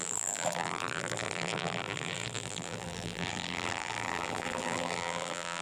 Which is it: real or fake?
fake